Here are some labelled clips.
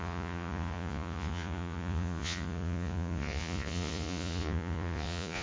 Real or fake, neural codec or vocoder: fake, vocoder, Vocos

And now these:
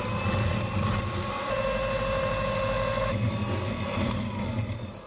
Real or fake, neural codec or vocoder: real